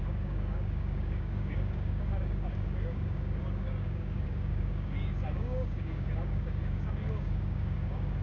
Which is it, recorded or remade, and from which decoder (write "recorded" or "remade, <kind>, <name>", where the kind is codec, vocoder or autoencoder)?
remade, codec, DAC